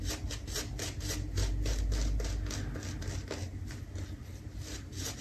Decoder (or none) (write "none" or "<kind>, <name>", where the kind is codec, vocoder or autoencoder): none